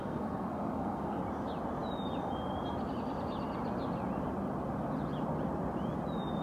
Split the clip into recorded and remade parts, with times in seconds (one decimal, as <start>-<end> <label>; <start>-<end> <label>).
0.0-1.2 remade; 1.2-6.4 recorded